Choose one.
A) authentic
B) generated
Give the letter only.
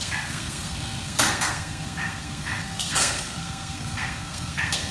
B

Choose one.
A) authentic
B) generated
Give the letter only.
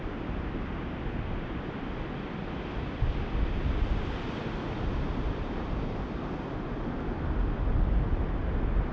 A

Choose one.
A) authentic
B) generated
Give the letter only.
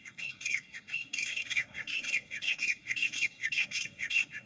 B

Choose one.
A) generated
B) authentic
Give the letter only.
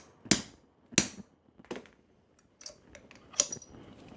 B